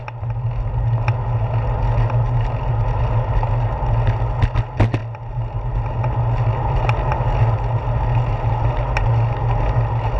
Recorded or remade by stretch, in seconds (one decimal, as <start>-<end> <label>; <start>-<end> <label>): 0.0-10.2 recorded